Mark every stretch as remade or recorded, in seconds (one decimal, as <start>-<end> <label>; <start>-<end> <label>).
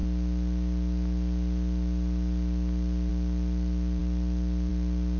0.0-5.2 recorded